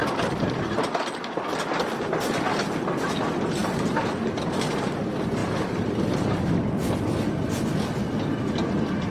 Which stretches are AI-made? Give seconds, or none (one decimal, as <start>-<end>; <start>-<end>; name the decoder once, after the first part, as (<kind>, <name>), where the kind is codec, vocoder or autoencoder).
0.0-2.2 (vocoder, BigVGAN v2); 5.4-7.0